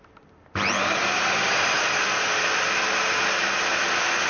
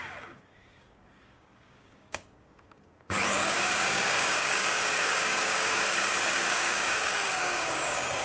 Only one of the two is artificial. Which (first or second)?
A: second